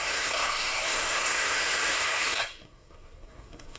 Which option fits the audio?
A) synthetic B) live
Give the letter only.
A